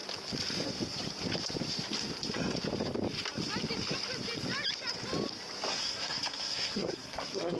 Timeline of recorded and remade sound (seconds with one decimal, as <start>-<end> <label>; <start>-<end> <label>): 0.0-5.7 recorded; 5.7-7.6 remade